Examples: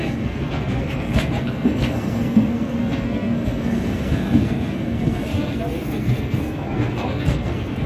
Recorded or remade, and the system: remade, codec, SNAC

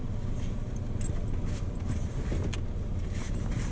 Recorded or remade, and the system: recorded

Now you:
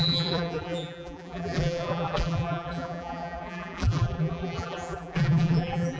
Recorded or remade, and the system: remade, vocoder, BigVGAN v2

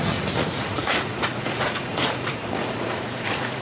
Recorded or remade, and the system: remade, vocoder, Vocos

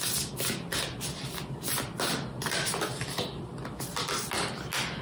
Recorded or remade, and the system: recorded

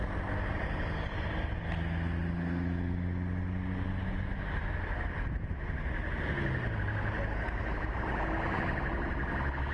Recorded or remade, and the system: recorded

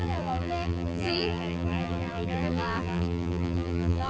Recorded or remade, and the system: remade, vocoder, BigVGAN v2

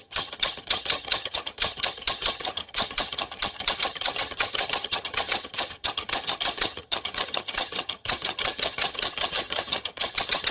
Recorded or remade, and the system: remade, vocoder, HiFi-GAN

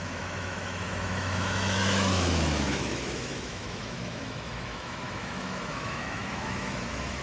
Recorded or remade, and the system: remade, autoencoder, DAC-VAE